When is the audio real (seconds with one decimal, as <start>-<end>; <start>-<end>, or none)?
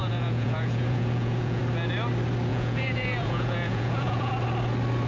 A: 1.6-2.5; 4.3-5.1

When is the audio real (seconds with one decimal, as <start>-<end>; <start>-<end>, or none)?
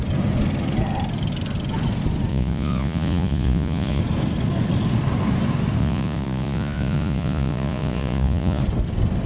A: 0.0-2.3; 4.0-5.8; 8.6-9.3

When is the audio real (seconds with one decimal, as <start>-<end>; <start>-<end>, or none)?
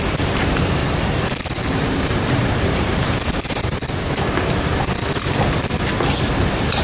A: 0.8-1.7; 3.8-6.8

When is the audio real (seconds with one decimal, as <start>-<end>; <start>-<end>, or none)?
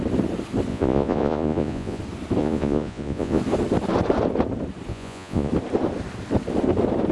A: 0.0-0.7; 2.0-2.4; 3.4-4.9; 5.5-7.1